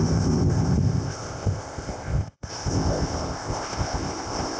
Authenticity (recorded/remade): remade